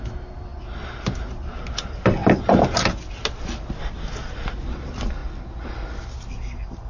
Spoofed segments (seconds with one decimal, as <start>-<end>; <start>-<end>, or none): none